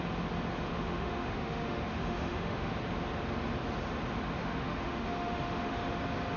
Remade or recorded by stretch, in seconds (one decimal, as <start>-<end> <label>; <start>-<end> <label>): 0.0-0.7 recorded; 0.7-2.7 remade; 2.7-4.4 recorded; 4.4-6.0 remade; 6.0-6.4 recorded